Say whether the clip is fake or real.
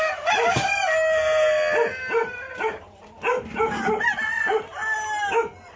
real